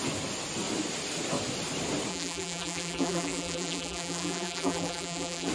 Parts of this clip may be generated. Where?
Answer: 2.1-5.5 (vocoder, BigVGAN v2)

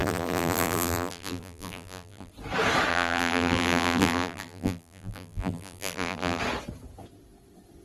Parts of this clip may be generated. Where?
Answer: 0.0-2.3 (vocoder, BigVGAN v2); 2.9-6.4

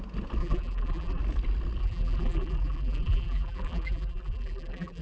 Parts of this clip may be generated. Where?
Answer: 0.4-1.2 (vocoder, BigVGAN v2); 1.8-5.0

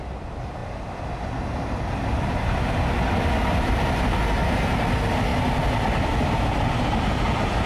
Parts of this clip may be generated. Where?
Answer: none

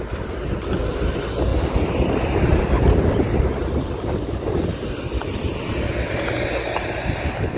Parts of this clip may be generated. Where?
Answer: none

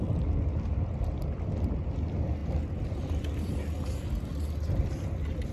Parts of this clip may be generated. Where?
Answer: 2.4-3.5 (vocoder, BigVGAN v2)